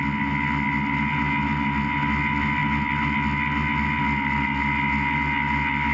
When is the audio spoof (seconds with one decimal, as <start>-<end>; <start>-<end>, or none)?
none